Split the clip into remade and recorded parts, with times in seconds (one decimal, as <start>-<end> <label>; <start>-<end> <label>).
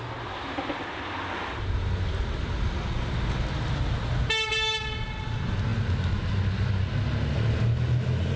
0.0-8.4 recorded